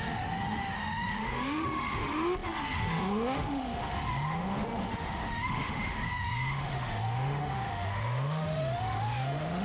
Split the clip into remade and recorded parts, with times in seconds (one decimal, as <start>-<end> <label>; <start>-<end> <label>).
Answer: 0.0-9.6 remade